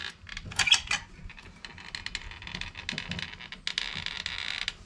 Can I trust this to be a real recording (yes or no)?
yes